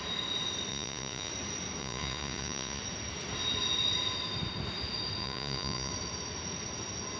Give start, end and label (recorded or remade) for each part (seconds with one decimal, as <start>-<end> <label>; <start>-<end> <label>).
0.0-0.7 recorded; 0.7-1.3 remade; 1.3-1.8 recorded; 1.8-2.8 remade; 2.8-5.2 recorded; 5.2-5.9 remade; 5.9-7.2 recorded